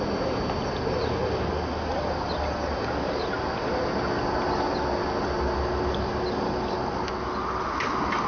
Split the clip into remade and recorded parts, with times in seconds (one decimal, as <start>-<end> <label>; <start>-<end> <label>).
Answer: 0.0-8.3 recorded